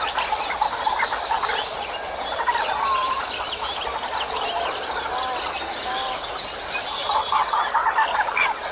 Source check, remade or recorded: recorded